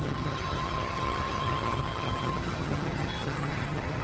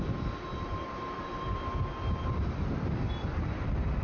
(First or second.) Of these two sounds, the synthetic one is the first